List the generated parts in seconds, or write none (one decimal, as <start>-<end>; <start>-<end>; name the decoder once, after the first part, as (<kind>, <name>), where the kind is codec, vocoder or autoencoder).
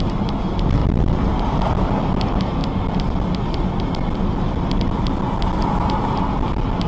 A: none